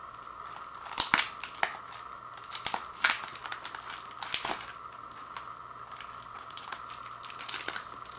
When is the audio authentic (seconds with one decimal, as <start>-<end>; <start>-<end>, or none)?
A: 0.0-6.3; 6.8-8.2